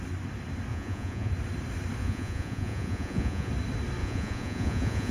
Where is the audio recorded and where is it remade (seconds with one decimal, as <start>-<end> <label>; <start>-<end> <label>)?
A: 0.0-0.7 recorded; 0.7-1.3 remade; 1.3-2.0 recorded; 2.0-3.5 remade; 3.5-4.0 recorded; 4.0-5.1 remade